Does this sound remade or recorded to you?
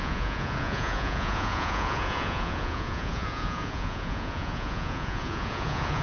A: remade